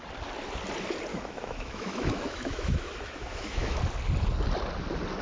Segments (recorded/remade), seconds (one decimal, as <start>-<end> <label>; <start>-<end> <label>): 0.0-1.1 recorded; 1.1-3.8 remade; 3.8-5.2 recorded